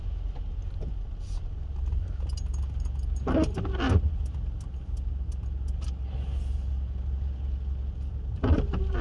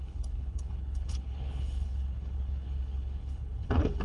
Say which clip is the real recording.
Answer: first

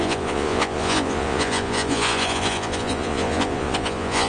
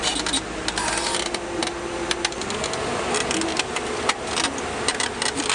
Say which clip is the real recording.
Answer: second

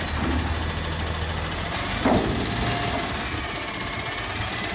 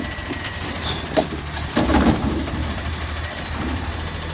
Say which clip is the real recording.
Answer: first